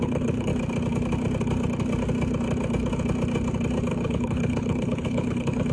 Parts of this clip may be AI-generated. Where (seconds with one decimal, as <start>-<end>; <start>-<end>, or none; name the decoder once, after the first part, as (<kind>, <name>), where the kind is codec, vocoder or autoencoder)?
0.0-0.5 (codec, HILCodec); 3.9-5.7